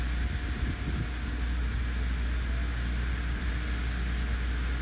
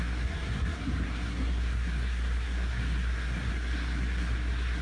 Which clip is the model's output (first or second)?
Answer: second